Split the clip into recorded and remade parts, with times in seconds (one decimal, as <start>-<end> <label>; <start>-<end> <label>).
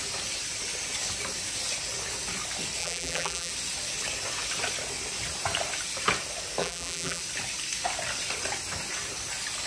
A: 0.0-2.8 recorded; 2.8-3.5 remade; 3.5-6.6 recorded; 6.6-7.2 remade; 7.2-9.7 recorded